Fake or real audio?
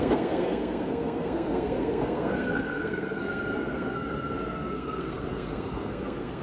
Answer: fake